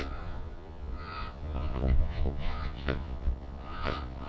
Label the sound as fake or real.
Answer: fake